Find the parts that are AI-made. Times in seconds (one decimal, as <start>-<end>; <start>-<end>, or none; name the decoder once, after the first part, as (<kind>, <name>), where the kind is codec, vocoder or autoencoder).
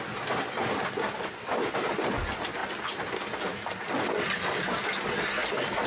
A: none